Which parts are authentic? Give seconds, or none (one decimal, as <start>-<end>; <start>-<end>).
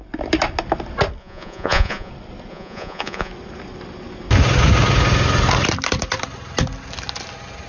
0.0-1.2; 2.1-2.5; 3.3-7.7